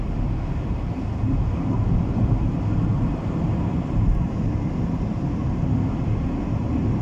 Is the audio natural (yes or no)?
yes